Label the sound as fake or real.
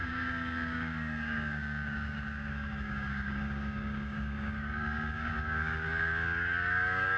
fake